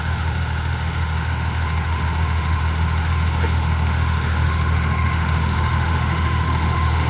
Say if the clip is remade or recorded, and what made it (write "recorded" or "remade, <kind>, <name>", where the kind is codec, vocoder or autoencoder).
remade, autoencoder, DAC-VAE